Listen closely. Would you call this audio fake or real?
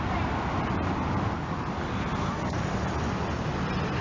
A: real